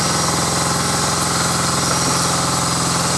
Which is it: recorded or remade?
recorded